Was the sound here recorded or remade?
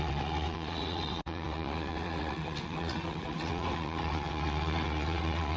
remade